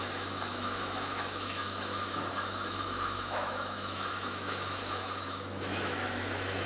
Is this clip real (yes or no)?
no